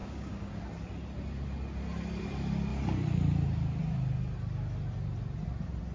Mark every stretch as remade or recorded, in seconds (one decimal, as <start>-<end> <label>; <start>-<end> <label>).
0.0-0.6 remade; 0.6-5.9 recorded